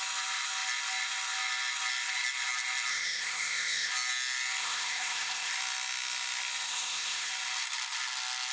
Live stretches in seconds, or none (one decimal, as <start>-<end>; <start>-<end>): 0.0-2.9; 3.9-4.6; 5.5-6.7; 7.3-8.5